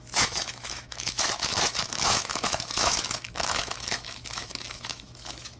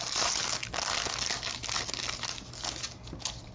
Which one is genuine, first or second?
second